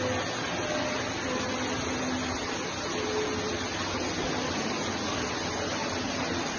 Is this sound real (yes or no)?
yes